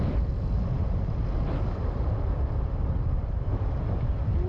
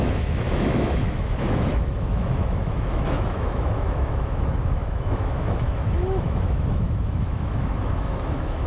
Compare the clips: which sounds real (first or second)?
first